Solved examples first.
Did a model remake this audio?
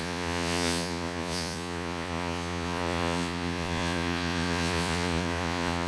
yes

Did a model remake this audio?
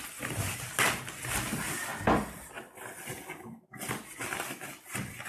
no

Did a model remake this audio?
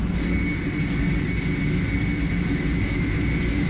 no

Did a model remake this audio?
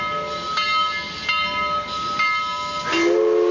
no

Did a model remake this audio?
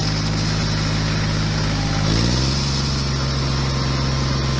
no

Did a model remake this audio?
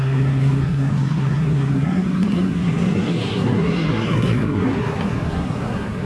yes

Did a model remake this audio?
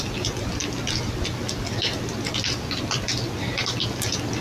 no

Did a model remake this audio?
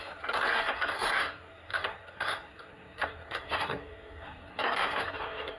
yes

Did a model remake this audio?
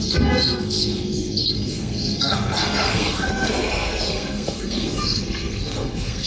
yes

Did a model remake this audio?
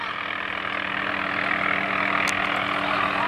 no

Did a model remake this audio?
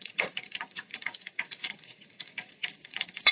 yes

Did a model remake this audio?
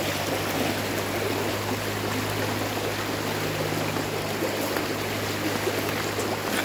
no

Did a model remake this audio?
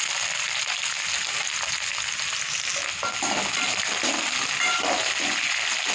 no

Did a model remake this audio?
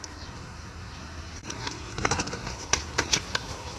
yes